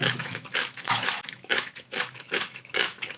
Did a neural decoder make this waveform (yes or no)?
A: yes